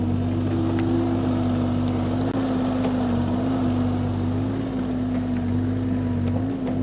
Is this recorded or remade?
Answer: recorded